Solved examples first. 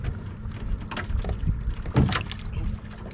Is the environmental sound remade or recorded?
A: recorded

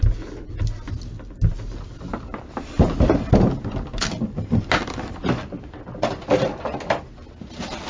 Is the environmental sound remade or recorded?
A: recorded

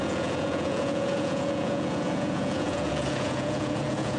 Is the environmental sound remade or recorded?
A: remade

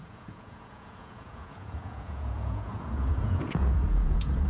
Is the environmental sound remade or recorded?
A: remade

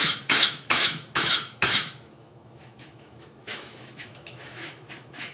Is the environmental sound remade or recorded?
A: remade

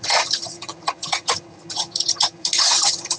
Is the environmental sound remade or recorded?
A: remade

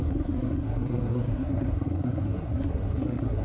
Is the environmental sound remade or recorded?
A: remade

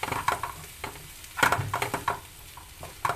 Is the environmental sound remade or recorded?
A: recorded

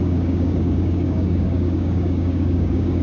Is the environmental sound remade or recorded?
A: remade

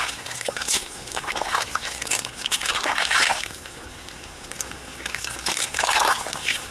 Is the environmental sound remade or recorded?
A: remade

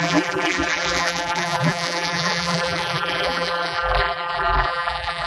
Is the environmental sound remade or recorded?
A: remade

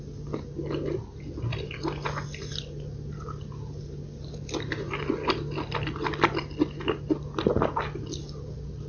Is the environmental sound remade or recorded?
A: recorded